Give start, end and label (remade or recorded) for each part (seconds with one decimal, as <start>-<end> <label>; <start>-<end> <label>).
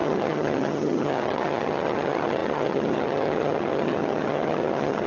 0.0-5.1 remade